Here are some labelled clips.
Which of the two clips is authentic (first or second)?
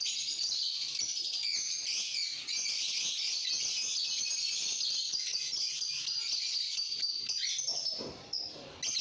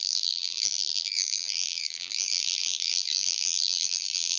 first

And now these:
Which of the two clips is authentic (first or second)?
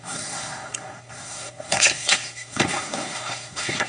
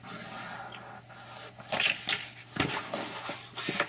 second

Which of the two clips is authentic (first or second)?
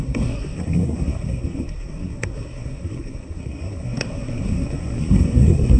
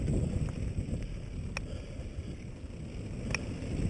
second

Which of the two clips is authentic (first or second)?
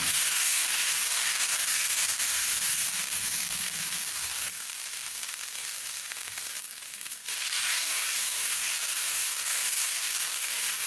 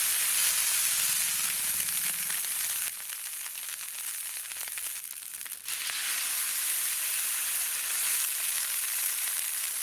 second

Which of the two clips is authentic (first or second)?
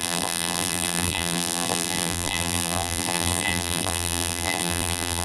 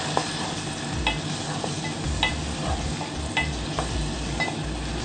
second